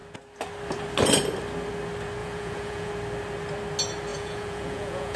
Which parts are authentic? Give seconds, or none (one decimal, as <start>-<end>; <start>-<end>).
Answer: 0.0-2.2; 2.9-4.1